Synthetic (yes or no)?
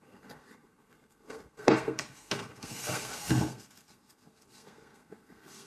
yes